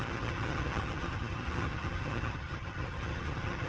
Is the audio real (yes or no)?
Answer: no